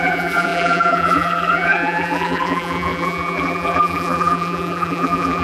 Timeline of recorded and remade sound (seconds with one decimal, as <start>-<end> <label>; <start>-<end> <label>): 0.0-5.4 remade